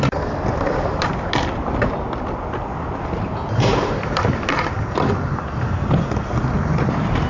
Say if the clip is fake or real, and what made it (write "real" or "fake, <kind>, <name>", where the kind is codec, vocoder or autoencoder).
real